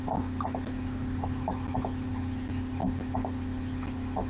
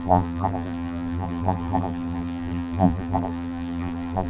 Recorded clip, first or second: first